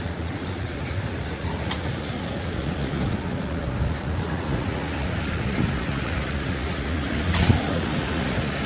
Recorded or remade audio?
remade